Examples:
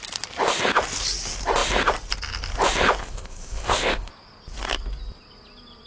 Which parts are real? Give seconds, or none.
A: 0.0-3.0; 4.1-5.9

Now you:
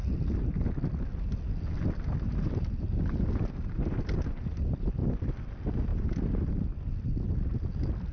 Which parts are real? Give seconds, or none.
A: 0.0-8.1

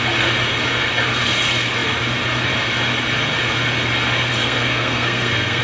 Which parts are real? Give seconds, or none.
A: 0.0-4.4

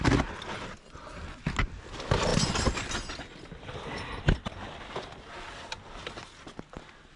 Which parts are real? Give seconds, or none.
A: 0.0-7.2

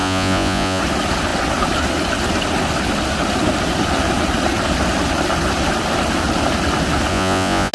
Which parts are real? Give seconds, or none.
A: 0.8-7.1

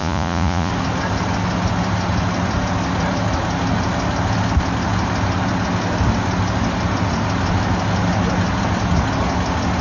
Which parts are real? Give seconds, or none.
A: 0.7-9.8

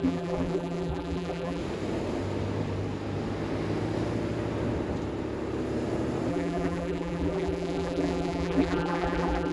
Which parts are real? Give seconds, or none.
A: 1.6-6.3

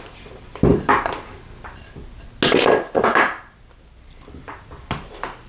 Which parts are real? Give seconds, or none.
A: 0.0-5.5